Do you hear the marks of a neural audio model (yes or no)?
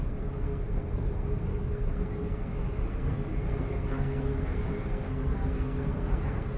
yes